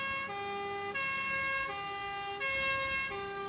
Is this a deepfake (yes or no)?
no